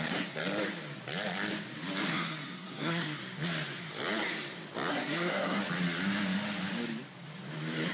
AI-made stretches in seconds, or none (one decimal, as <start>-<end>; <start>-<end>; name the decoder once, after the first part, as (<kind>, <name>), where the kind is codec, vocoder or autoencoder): 0.0-0.4 (codec, SNAC); 2.1-3.2; 4.9-5.6